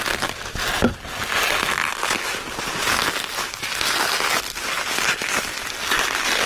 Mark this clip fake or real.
real